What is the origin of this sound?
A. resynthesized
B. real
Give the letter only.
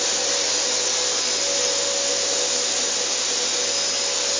B